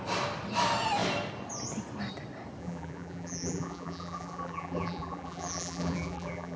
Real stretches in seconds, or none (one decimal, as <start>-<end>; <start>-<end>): 0.0-2.6